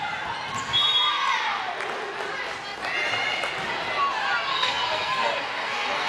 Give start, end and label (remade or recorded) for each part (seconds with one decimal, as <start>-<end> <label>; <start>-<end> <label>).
0.0-4.5 recorded; 4.5-6.1 remade